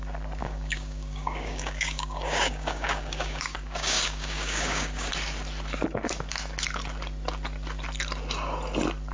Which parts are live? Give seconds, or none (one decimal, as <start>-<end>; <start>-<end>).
0.0-0.4; 5.1-9.1